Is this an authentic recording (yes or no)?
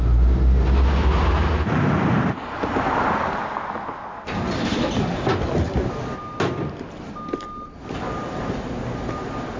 yes